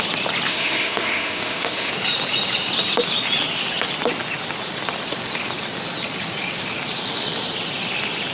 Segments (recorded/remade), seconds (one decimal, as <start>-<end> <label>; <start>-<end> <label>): 0.0-0.5 recorded; 0.5-1.9 remade; 1.9-8.3 recorded